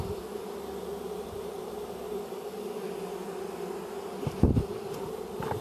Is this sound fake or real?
real